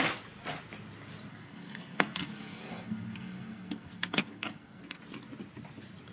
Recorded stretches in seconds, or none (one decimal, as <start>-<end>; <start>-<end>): 0.0-1.3; 5.0-6.1